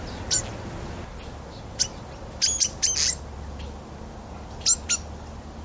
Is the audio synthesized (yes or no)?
no